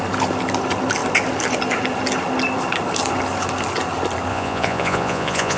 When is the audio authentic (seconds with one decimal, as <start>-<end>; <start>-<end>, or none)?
0.0-4.3